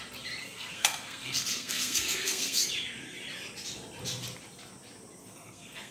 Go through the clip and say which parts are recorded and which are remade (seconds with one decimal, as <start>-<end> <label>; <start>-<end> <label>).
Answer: 0.0-0.4 recorded; 0.4-2.7 remade; 2.7-5.2 recorded; 5.2-5.9 remade